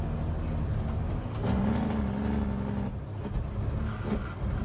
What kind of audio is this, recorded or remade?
recorded